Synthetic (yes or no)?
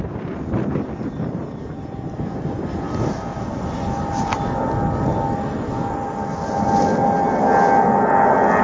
no